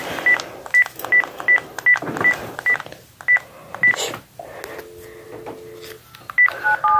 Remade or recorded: recorded